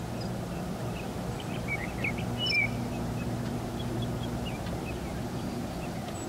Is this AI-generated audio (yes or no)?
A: no